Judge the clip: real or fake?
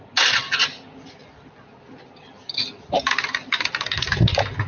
real